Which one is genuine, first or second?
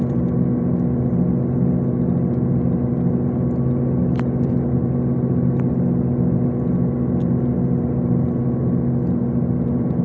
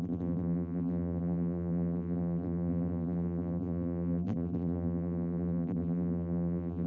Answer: first